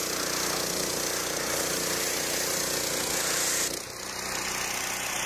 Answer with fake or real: real